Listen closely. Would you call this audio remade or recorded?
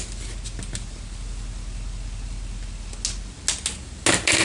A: recorded